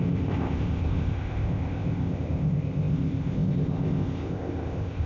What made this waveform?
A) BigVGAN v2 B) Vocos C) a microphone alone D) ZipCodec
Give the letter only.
D